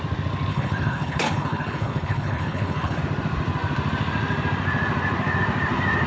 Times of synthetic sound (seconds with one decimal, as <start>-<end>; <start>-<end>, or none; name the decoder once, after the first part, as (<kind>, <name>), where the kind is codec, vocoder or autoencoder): 0.5-3.0 (codec, HILCodec)